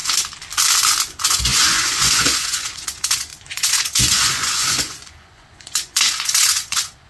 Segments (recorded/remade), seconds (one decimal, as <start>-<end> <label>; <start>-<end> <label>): 0.0-1.1 recorded; 1.1-7.1 remade